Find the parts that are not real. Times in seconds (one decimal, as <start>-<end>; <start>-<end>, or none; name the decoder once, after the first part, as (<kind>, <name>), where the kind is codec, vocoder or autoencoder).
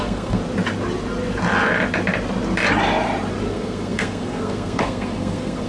0.0-0.4 (codec, SNAC); 3.5-5.7